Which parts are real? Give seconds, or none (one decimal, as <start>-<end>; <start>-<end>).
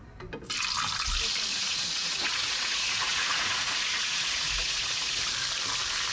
0.0-1.5; 5.2-6.1